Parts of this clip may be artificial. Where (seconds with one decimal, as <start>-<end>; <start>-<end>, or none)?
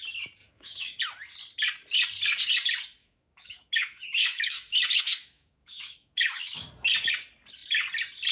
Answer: 0.4-1.0; 3.0-6.7